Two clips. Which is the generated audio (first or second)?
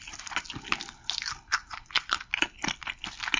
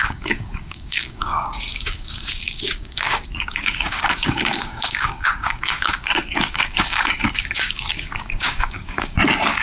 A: second